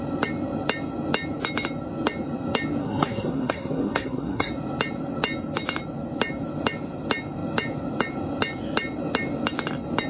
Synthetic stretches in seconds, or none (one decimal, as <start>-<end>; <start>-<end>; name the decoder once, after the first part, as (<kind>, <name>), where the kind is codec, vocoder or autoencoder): 2.8-4.5 (codec, SNAC)

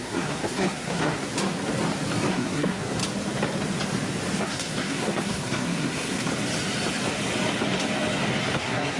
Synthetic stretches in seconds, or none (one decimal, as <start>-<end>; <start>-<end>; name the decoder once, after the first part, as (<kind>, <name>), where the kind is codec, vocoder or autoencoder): 0.0-1.2 (codec, SNAC); 2.3-3.0; 4.4-6.3; 8.6-9.0